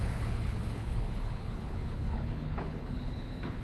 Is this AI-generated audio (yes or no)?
yes